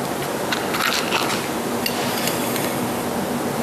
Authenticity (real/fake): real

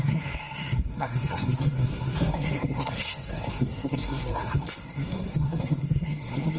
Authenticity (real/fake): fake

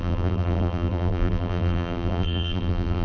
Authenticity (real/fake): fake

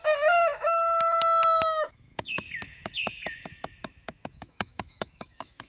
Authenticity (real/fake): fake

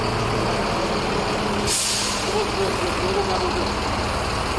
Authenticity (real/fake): real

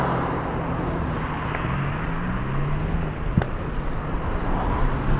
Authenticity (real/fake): real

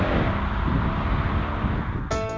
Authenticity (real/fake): real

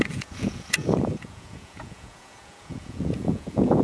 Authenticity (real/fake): fake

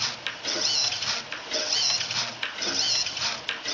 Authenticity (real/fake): real